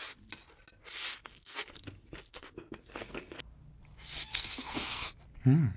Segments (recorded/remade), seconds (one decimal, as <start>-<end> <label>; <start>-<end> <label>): 0.0-1.2 recorded; 1.2-1.8 remade; 1.8-2.3 recorded; 2.3-3.4 remade; 3.4-4.3 recorded; 4.3-5.1 remade; 5.1-5.8 recorded